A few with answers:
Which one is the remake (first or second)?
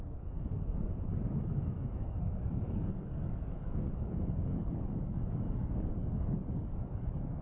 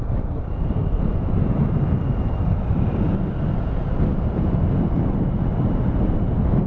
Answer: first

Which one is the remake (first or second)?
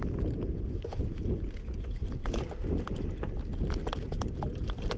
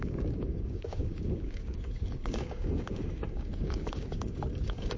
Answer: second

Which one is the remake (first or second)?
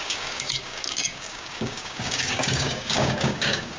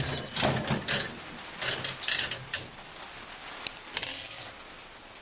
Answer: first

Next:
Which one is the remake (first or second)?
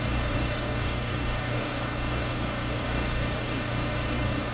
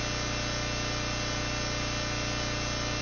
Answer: first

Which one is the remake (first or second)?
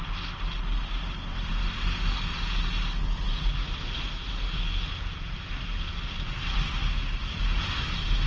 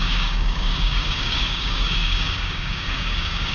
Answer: second